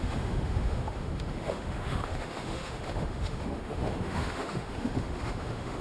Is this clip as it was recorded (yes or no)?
no